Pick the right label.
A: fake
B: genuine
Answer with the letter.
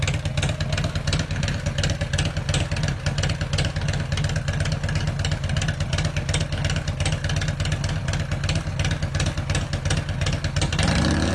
B